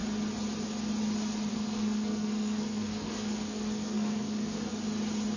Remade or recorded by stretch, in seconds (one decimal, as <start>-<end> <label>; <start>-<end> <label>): 0.0-1.5 recorded; 1.5-4.7 remade; 4.7-5.4 recorded